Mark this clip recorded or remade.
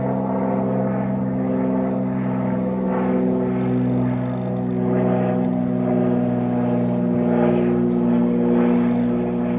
recorded